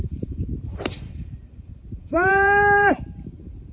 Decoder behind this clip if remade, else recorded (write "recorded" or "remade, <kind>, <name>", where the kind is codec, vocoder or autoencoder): remade, vocoder, BigVGAN v2